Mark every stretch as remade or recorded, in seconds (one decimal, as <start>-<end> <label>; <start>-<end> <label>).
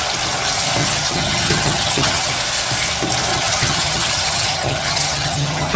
0.0-0.8 recorded; 0.8-2.3 remade; 2.3-3.3 recorded; 3.3-5.8 remade